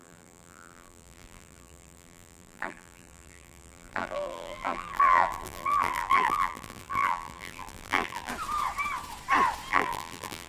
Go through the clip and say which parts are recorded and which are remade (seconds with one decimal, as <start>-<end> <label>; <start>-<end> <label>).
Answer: 0.0-8.3 remade; 8.3-9.7 recorded; 9.7-10.5 remade